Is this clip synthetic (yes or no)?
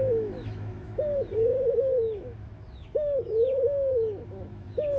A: yes